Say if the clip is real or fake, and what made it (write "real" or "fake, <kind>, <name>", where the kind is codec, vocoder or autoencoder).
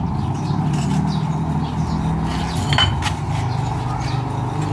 real